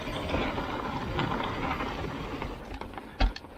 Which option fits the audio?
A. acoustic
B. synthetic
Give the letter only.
A